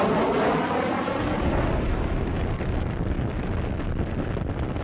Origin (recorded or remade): recorded